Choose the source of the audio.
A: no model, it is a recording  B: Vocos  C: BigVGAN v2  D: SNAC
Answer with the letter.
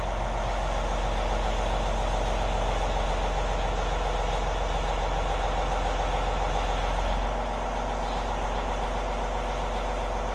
A